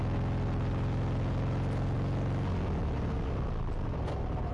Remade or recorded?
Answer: recorded